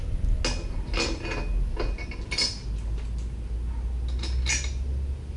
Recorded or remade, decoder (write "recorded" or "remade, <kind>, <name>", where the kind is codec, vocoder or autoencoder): recorded